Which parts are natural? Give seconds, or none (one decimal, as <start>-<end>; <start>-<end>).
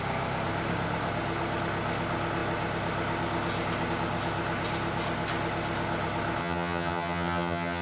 0.0-6.4